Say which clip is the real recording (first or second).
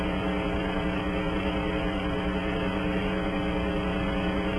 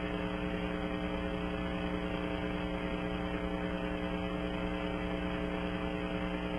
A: second